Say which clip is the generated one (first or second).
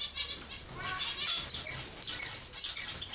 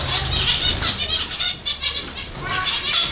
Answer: second